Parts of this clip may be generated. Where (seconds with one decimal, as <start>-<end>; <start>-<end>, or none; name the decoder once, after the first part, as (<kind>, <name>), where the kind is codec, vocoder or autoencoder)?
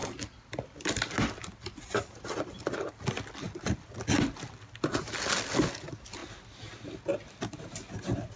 none